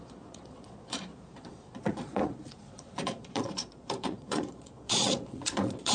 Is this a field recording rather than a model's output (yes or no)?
no